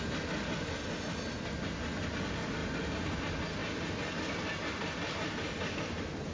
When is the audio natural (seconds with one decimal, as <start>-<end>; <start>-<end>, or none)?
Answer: 0.0-6.3